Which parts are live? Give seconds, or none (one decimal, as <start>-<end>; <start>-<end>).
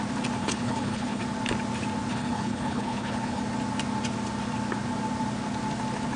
0.0-0.4; 1.2-2.1; 3.4-6.2